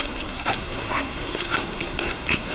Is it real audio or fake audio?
fake